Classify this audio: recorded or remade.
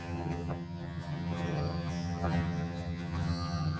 remade